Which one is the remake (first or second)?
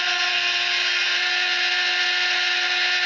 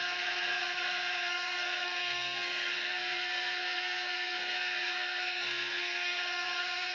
second